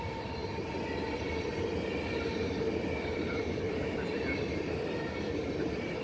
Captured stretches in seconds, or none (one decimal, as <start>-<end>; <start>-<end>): none